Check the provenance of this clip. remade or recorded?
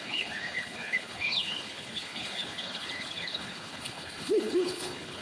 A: remade